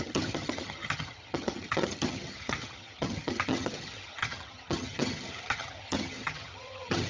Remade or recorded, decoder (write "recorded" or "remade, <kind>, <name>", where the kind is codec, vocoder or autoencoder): remade, vocoder, HiFi-GAN